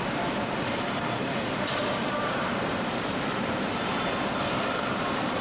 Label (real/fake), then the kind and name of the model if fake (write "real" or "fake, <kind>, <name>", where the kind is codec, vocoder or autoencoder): fake, vocoder, BigVGAN v2